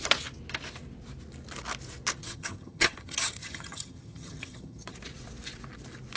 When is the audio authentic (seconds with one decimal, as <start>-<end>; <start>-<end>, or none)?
0.0-2.2; 4.9-6.2